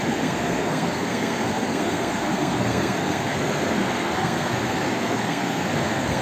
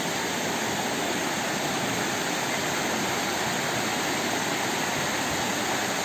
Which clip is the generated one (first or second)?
first